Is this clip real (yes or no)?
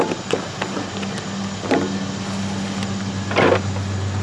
yes